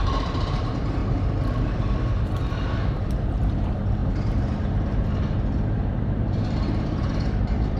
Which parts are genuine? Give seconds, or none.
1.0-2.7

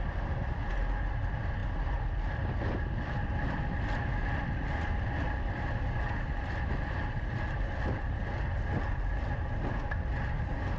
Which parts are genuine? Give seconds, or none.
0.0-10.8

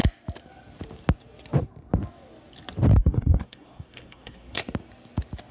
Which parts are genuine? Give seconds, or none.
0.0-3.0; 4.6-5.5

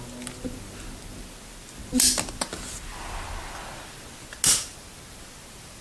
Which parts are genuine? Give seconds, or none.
0.0-5.8

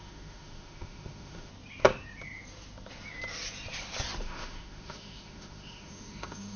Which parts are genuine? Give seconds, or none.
1.5-4.2

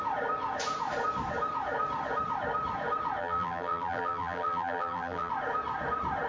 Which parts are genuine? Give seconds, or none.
0.0-3.2; 5.3-6.3